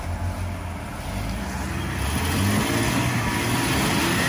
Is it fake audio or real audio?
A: real